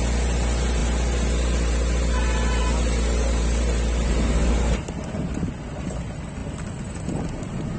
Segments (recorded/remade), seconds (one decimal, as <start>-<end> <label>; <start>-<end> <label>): 0.0-7.8 recorded